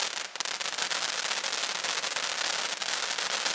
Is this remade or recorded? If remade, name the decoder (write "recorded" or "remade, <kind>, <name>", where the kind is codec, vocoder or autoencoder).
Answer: recorded